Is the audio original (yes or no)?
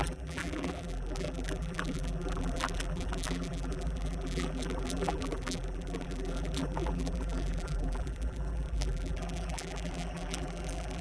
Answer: no